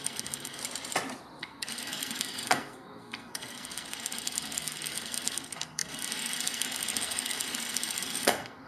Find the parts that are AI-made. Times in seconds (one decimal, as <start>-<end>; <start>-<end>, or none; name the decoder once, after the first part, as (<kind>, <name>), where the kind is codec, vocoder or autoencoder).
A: 0.0-0.6 (codec, SNAC); 1.4-8.7